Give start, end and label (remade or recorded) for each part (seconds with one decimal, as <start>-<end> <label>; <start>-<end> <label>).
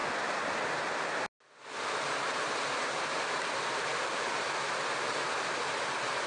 0.0-1.9 recorded; 1.9-3.9 remade; 3.9-6.3 recorded